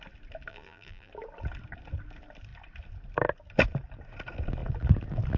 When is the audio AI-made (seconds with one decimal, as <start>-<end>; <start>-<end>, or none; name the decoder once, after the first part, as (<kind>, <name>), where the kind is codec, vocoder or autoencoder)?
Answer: 0.5-1.1 (vocoder, BigVGAN v2)